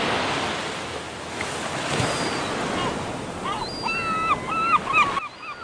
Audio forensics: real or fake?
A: real